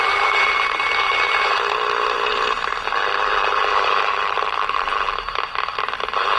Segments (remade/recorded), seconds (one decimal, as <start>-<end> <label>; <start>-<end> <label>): 0.0-6.4 remade